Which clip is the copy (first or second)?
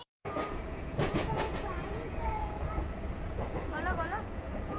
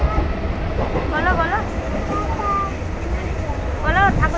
first